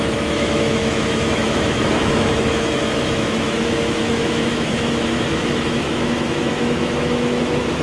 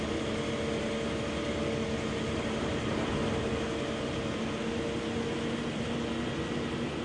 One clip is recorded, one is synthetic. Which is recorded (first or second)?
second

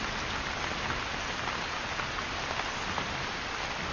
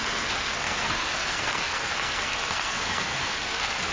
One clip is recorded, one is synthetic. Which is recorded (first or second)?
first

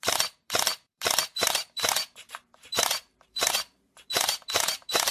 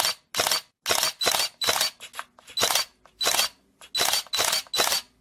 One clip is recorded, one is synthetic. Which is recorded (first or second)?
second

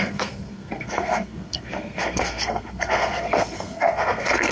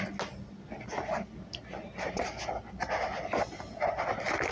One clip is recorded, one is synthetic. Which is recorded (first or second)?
second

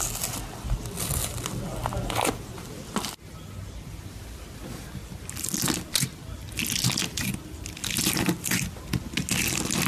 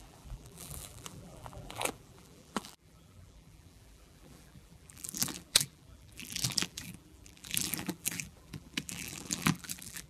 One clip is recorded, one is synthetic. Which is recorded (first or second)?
first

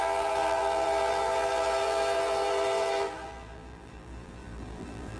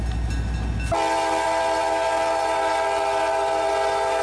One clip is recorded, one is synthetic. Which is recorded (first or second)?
second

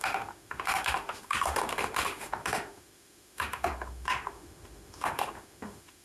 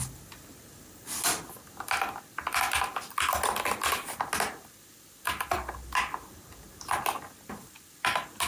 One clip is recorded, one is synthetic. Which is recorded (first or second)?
second